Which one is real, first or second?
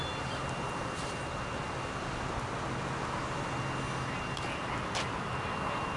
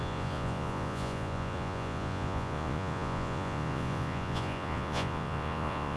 first